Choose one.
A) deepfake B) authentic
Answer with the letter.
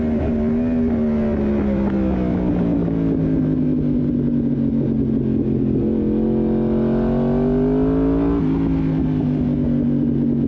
B